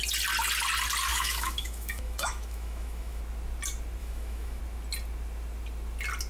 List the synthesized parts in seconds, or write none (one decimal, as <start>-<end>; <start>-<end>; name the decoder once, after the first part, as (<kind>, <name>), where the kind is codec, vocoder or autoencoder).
1.1-3.2 (autoencoder, DAC-VAE); 4.0-4.6

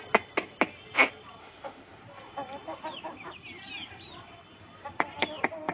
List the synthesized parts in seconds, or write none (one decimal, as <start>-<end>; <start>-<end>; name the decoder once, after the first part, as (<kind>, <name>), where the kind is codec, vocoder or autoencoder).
1.4-2.0 (autoencoder, DAC-VAE)